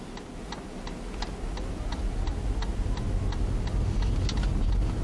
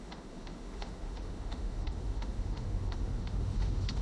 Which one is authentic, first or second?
first